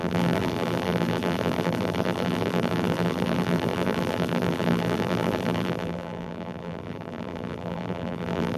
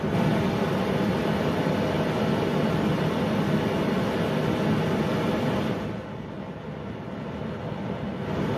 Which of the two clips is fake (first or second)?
first